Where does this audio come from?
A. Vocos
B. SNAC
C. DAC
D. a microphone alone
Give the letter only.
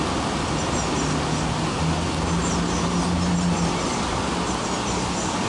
D